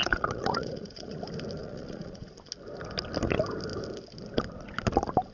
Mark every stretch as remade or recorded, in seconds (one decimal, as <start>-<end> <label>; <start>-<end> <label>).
0.0-1.2 remade; 1.2-1.6 recorded; 1.6-2.3 remade; 2.3-5.3 recorded